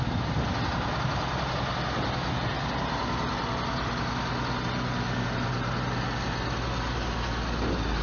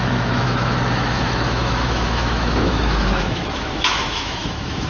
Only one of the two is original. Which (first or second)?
first